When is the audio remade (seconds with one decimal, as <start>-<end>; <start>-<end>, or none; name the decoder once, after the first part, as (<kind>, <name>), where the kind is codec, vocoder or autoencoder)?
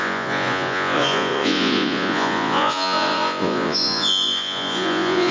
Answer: 0.0-5.3 (vocoder, Vocos)